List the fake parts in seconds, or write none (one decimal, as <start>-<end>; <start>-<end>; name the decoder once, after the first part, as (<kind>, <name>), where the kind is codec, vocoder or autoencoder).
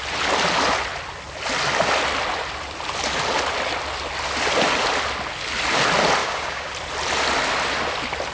6.2-6.7 (codec, DAC)